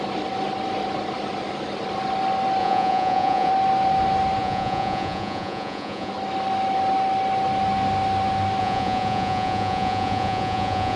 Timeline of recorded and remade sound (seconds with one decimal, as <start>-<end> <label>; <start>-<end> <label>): 0.0-2.6 recorded; 2.6-3.5 remade; 3.5-4.4 recorded; 4.4-6.1 remade; 6.1-8.6 recorded; 8.6-11.0 remade